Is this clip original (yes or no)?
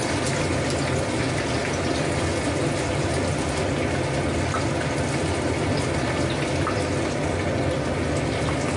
yes